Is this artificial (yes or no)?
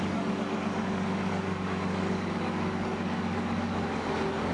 yes